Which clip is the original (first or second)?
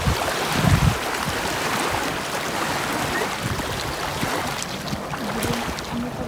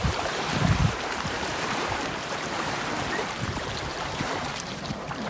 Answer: first